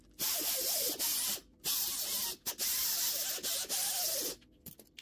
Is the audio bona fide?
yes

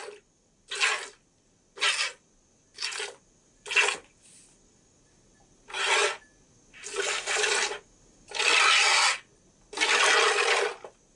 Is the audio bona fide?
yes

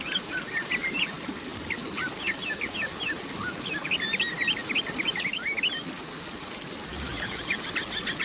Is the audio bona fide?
yes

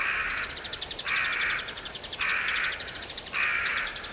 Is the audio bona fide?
no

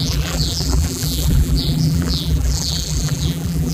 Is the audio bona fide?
no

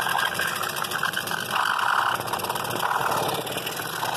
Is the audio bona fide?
yes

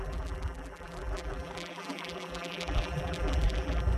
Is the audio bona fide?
no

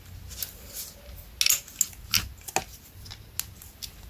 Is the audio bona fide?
yes